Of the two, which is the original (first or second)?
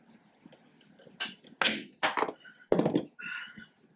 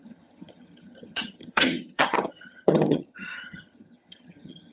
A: first